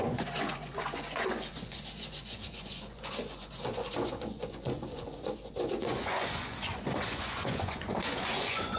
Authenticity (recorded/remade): remade